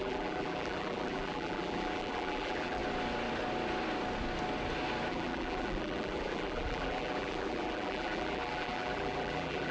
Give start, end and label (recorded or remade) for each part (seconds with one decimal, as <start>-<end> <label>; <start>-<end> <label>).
0.0-2.8 remade; 2.8-5.1 recorded; 5.1-9.7 remade